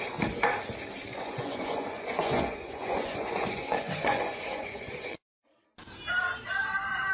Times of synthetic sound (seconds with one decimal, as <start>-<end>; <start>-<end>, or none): 1.1-5.4